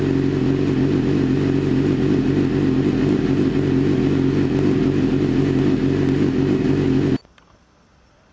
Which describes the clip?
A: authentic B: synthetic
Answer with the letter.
A